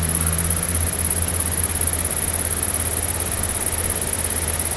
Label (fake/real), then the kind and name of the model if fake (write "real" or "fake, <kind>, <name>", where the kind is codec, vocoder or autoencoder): real